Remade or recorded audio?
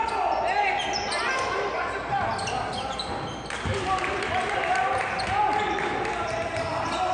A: recorded